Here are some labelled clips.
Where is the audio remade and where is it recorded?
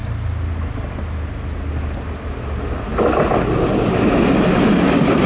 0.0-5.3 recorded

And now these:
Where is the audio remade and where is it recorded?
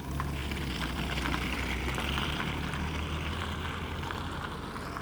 0.0-0.4 recorded; 0.4-3.4 remade; 3.4-5.0 recorded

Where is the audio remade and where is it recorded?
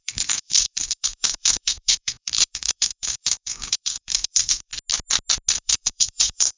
0.0-4.7 remade; 4.7-5.5 recorded; 5.5-6.6 remade